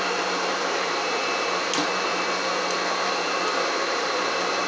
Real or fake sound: fake